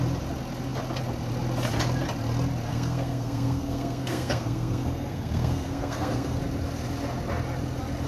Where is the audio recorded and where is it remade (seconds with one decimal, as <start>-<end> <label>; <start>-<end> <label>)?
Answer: 0.0-2.7 recorded; 2.7-6.4 remade; 6.4-8.1 recorded